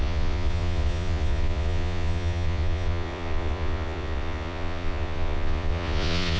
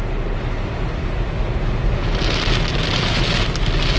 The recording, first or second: second